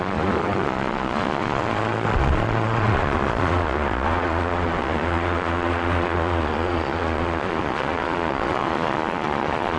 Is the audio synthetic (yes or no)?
yes